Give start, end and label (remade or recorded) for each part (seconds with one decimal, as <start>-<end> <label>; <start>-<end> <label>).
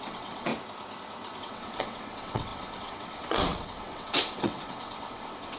0.0-0.5 remade; 0.5-1.4 recorded; 1.4-5.6 remade